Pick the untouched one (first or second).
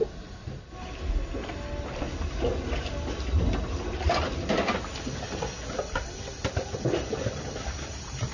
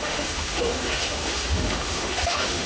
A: first